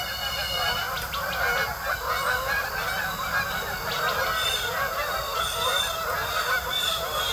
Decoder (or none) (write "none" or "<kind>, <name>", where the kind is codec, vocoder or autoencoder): none